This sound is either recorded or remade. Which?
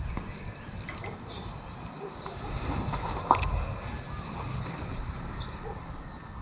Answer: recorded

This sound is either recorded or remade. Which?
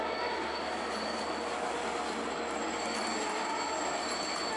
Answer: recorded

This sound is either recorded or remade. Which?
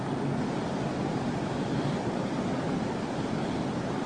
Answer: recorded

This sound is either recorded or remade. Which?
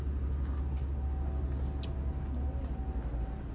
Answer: recorded